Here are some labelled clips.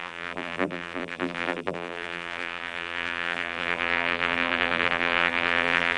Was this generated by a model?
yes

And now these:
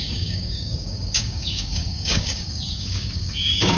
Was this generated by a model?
yes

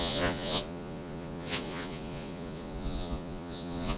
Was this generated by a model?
yes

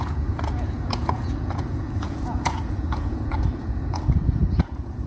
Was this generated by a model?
yes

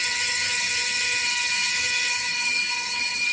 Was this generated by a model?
yes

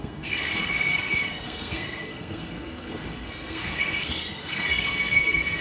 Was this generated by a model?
yes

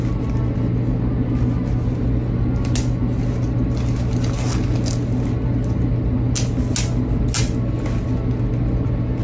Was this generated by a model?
no